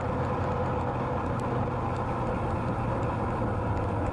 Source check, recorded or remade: recorded